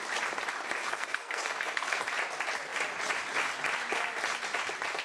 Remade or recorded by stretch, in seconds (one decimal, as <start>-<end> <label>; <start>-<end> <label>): 0.0-0.8 recorded; 0.8-2.0 remade; 2.0-5.0 recorded